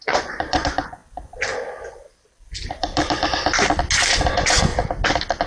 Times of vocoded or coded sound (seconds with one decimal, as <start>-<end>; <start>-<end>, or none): 0.0-1.0; 4.3-4.7